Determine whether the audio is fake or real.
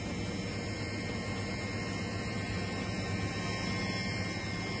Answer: real